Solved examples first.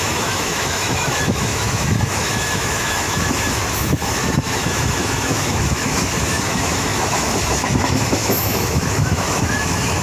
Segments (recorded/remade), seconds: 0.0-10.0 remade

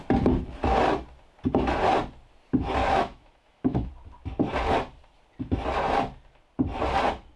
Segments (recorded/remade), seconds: 0.0-2.8 recorded; 2.8-3.9 remade; 3.9-7.4 recorded

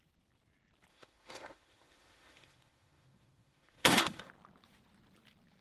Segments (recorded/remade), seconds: 0.0-0.9 recorded; 0.9-4.3 remade; 4.3-5.6 recorded